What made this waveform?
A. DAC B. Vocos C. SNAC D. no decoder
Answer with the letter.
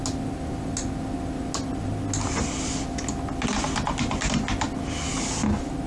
D